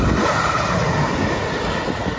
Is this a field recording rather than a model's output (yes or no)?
yes